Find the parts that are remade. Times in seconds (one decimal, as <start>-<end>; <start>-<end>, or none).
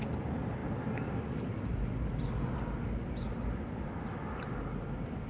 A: none